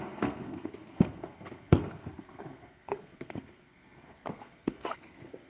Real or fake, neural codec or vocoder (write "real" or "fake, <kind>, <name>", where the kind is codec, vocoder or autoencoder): fake, codec, SNAC